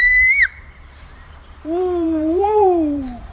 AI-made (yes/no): yes